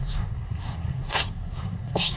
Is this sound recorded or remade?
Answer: remade